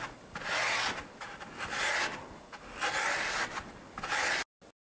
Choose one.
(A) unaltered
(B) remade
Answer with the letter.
A